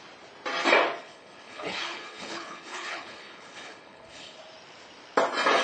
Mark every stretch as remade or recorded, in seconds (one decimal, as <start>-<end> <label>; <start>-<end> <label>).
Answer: 0.0-1.0 recorded; 1.0-4.4 remade; 4.4-5.6 recorded